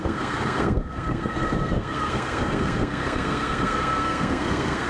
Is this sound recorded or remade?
remade